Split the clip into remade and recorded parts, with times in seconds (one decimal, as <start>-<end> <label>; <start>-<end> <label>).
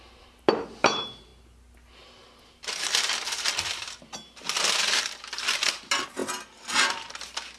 0.0-1.3 remade; 1.3-5.0 recorded; 5.0-6.2 remade; 6.2-7.6 recorded